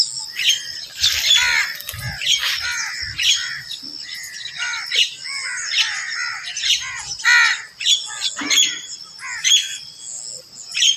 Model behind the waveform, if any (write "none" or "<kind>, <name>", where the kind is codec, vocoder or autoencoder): none